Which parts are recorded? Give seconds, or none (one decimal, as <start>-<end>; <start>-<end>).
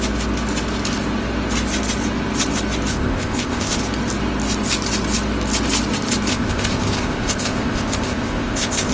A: 0.0-2.9; 3.8-6.3